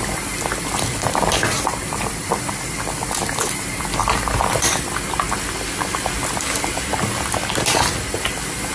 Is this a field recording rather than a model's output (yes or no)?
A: no